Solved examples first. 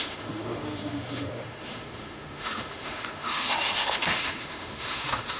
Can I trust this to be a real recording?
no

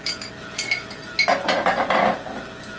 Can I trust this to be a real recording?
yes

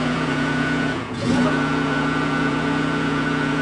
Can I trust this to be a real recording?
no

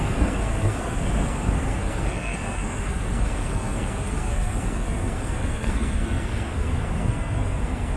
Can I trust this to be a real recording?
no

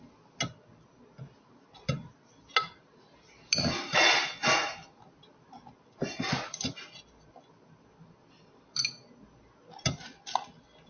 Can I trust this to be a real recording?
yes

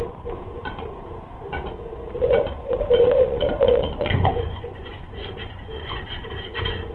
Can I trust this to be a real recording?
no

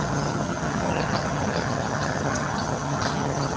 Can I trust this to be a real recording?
no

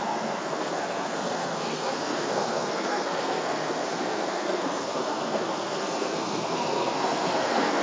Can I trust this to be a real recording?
no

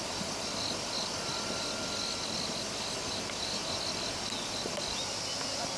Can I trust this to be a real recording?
yes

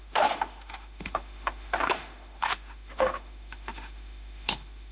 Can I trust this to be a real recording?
no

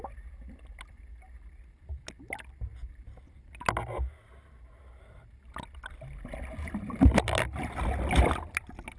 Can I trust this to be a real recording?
yes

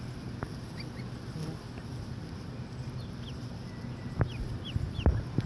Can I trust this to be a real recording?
no